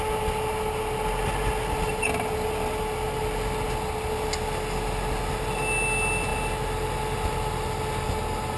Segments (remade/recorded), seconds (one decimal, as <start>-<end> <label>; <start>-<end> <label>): 0.0-8.6 recorded